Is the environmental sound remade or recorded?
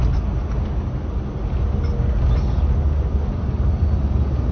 recorded